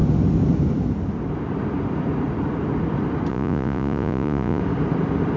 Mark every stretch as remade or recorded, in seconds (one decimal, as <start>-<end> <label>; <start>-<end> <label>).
0.0-3.3 recorded; 3.3-4.6 remade; 4.6-5.4 recorded